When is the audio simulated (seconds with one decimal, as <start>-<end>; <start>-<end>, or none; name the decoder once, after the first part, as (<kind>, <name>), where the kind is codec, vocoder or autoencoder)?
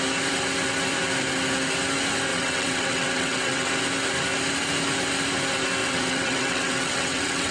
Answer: 2.3-3.7 (vocoder, WaveNeXt); 5.8-7.5